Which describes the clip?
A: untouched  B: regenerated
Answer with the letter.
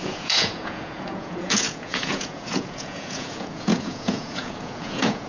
B